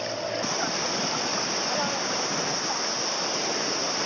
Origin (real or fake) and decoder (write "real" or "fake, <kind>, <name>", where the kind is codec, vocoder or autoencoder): real